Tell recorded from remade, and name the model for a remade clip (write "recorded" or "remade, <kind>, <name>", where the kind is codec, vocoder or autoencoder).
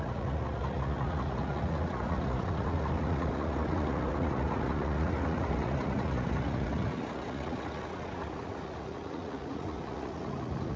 remade, vocoder, Vocos